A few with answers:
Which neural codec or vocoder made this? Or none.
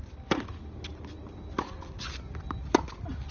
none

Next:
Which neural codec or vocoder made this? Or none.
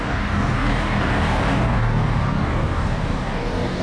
codec, DAC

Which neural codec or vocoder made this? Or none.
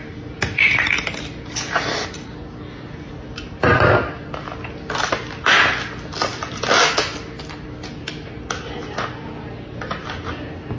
none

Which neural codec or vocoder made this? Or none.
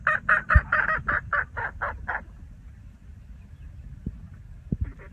none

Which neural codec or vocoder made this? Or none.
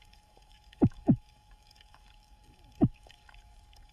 codec, DAC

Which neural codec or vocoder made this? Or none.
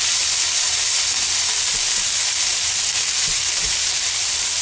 none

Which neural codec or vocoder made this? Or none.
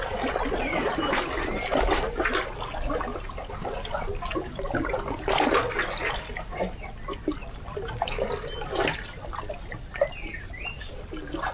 none